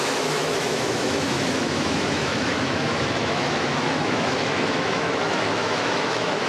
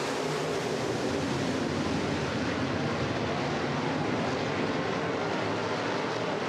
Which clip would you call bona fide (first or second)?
second